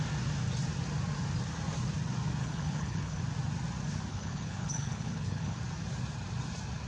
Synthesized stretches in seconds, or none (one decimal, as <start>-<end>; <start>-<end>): 2.4-3.2; 4.1-5.6